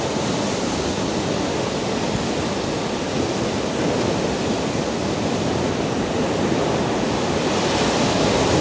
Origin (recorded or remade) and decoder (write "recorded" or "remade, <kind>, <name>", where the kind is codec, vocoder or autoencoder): remade, vocoder, BigVGAN v2